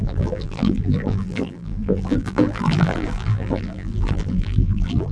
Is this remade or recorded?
remade